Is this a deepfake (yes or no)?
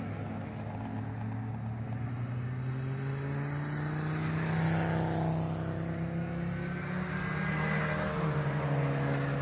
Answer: no